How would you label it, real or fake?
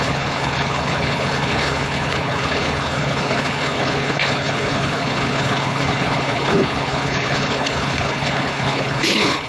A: fake